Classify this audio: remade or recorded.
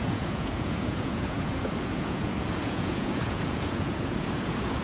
remade